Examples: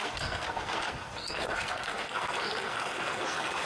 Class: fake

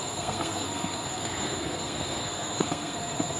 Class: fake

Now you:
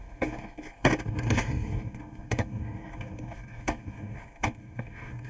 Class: fake